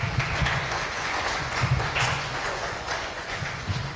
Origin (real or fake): fake